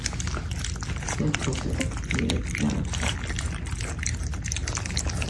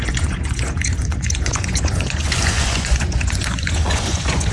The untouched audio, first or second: first